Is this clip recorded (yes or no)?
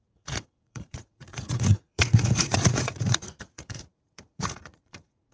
no